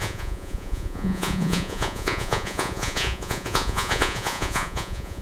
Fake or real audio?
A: fake